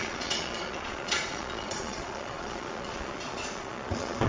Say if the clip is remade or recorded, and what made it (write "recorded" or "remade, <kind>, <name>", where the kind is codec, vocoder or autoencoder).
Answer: remade, vocoder, Vocos